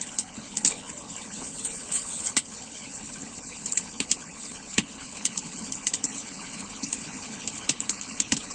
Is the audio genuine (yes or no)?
no